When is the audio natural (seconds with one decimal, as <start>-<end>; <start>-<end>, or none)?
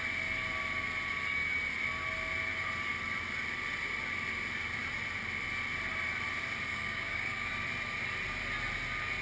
0.0-6.7; 7.5-9.2